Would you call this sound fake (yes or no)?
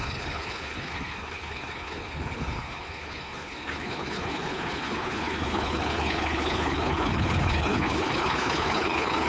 yes